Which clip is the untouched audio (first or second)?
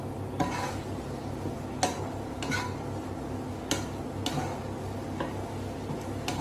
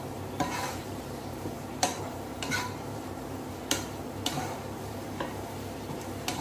first